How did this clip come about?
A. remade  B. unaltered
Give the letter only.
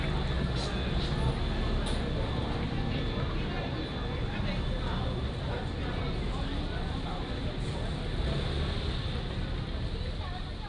B